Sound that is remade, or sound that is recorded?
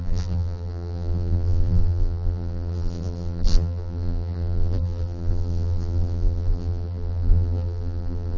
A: remade